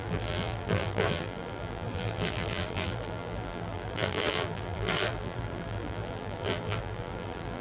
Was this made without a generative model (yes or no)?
no